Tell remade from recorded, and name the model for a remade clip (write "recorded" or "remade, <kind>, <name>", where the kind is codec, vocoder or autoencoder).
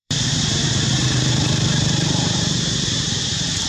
remade, vocoder, BigVGAN v2